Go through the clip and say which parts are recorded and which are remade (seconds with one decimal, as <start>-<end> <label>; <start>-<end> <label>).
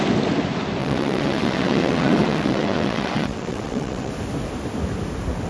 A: 0.0-0.8 recorded; 0.8-4.1 remade; 4.1-5.5 recorded